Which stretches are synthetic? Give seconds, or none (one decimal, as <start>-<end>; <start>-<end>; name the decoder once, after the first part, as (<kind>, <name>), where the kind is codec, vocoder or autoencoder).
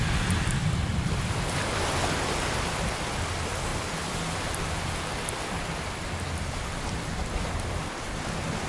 none